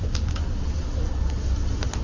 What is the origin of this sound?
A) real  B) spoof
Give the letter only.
A